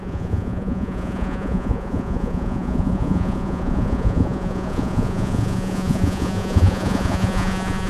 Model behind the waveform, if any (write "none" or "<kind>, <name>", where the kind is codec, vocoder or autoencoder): vocoder, Vocos